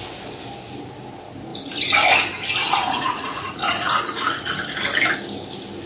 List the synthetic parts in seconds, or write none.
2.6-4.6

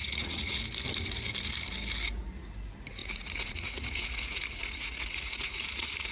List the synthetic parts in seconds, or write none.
0.0-0.6; 3.0-6.1

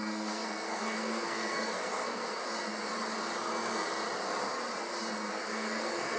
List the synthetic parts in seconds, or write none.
0.0-2.4; 5.3-6.2